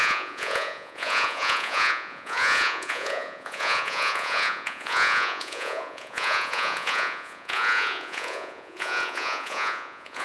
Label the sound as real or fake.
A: fake